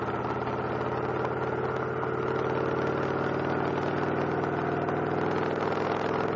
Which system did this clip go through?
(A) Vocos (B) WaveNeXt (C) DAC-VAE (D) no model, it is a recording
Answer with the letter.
D